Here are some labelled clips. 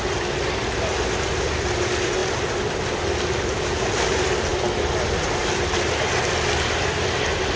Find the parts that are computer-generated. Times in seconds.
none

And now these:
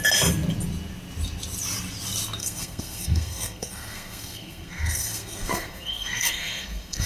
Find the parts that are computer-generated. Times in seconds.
2.4-7.1 (codec, SNAC)

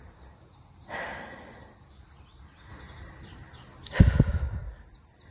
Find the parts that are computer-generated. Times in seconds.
none